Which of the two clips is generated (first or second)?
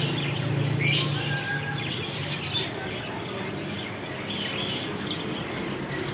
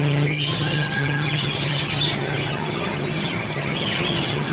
second